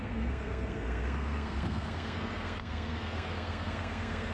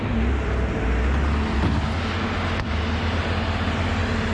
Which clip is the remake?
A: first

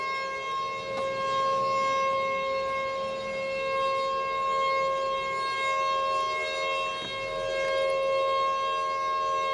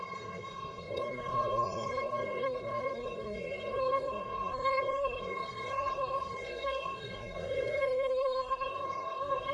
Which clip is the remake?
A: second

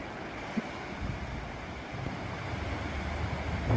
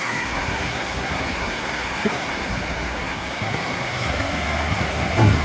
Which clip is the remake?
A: second